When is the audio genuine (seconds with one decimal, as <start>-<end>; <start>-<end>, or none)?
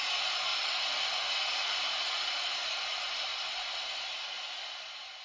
0.5-1.3; 3.3-4.8